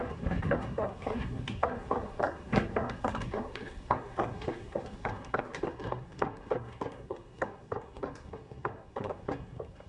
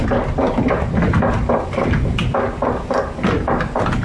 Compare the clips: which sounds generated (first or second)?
first